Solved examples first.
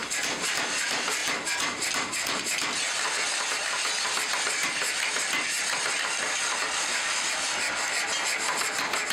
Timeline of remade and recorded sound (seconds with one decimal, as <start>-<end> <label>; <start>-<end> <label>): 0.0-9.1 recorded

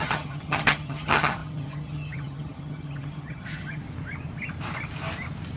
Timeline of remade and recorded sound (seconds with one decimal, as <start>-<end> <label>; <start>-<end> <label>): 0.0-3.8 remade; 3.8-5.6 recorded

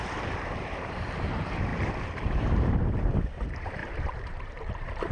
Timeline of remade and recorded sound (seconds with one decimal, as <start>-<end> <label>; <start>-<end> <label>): 0.0-5.1 remade

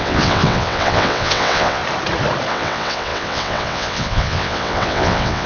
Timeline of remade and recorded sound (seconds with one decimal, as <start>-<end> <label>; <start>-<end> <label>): 0.0-1.8 remade; 1.8-2.5 recorded; 2.5-5.5 remade

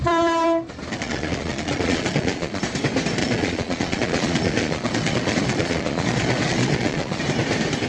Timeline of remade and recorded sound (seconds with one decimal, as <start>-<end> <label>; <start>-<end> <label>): 0.0-0.9 recorded; 0.9-2.6 remade; 2.6-3.2 recorded; 3.2-7.2 remade; 7.2-7.9 recorded

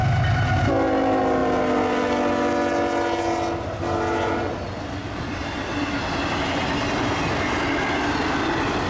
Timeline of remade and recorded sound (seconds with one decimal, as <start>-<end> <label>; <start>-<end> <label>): 0.0-8.9 recorded

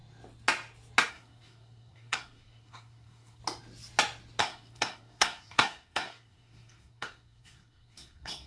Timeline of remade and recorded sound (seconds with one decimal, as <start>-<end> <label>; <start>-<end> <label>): 0.0-1.1 recorded; 1.1-3.4 remade; 3.4-4.4 recorded; 4.4-8.5 remade